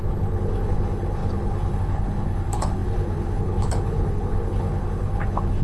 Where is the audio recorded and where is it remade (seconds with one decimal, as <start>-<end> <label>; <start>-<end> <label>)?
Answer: 0.0-5.6 remade